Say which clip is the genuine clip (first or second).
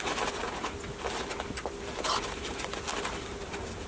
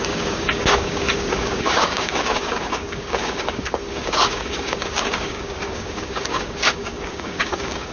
first